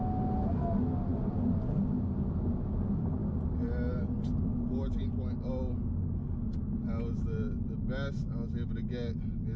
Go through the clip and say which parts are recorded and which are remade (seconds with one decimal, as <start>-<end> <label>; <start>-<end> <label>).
0.0-9.6 recorded